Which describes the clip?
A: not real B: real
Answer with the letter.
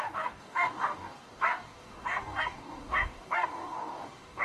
A